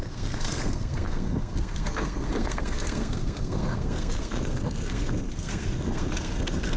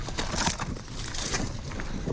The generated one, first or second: first